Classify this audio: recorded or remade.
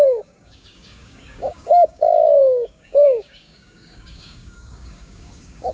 remade